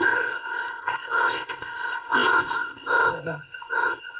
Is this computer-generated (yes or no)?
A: yes